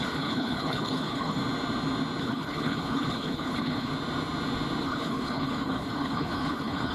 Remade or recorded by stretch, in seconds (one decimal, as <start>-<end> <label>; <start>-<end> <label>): 0.0-1.4 remade; 1.4-2.2 recorded; 2.2-3.9 remade; 3.9-4.8 recorded; 4.8-6.9 remade